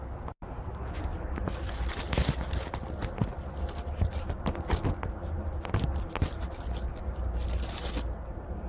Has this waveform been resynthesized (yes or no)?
no